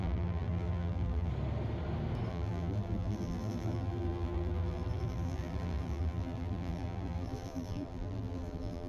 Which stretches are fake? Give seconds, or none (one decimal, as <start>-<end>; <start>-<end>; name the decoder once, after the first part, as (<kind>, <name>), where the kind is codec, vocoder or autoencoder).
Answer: 0.0-1.3 (vocoder, BigVGAN v2); 2.3-8.9